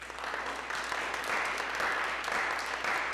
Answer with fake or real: real